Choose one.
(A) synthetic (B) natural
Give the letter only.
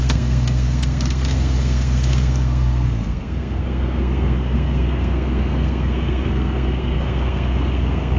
A